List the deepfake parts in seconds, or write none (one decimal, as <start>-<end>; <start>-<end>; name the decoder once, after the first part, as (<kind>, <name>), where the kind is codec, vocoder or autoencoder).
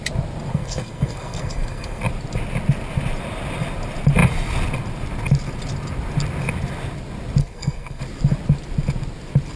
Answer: 0.5-2.0 (codec, SNAC); 7.4-8.0